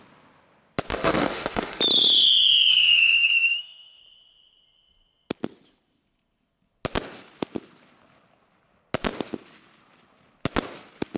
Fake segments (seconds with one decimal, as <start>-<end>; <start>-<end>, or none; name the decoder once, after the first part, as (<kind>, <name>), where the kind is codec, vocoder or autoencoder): 0.9-1.8 (autoencoder, DAC-VAE); 2.7-4.0